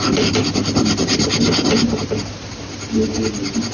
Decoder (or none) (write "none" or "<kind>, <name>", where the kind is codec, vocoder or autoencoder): none